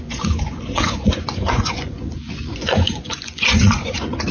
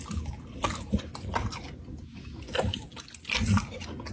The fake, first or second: first